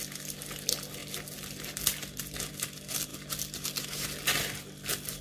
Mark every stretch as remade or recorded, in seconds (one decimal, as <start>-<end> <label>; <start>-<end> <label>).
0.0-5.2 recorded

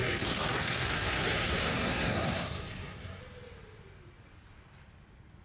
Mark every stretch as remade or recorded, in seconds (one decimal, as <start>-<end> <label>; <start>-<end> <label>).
0.0-3.2 remade; 3.2-5.4 recorded

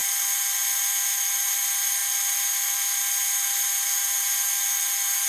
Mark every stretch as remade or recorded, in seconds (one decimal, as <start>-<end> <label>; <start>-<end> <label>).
0.0-5.3 recorded

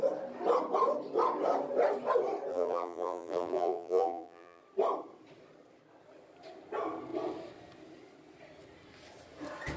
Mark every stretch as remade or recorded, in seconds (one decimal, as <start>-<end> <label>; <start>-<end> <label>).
0.0-2.5 recorded; 2.5-4.6 remade; 4.6-9.8 recorded